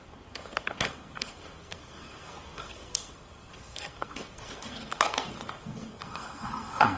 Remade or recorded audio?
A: remade